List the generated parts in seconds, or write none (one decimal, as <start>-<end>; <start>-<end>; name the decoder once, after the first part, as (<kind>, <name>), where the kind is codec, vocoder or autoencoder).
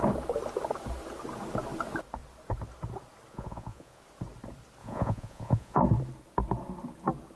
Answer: 3.3-4.0 (vocoder, Vocos); 4.8-5.8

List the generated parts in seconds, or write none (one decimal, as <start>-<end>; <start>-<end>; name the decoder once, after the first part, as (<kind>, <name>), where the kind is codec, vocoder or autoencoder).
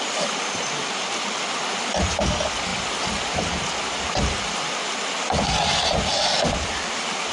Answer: none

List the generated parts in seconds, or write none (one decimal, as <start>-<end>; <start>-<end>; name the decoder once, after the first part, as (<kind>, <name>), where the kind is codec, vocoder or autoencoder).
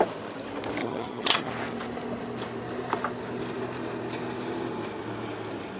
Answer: 0.8-1.5 (vocoder, HiFi-GAN)